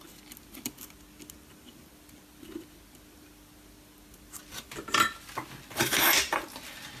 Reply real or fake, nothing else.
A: real